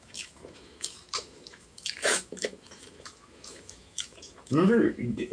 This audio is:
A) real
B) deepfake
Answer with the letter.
B